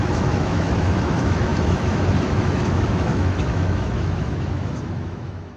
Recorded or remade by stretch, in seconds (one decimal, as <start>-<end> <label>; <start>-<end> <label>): 0.0-5.6 remade